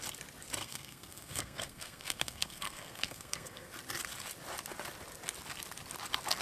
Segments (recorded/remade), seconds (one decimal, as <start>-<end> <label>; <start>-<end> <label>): 0.0-0.6 recorded; 0.6-3.7 remade; 3.7-6.4 recorded